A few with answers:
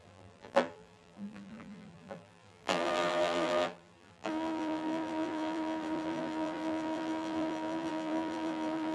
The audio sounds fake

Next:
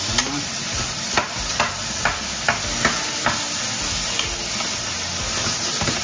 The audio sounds real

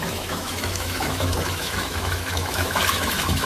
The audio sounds fake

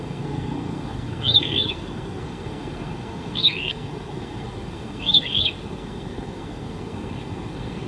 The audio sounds fake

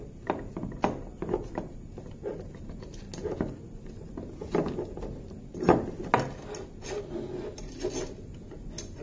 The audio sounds real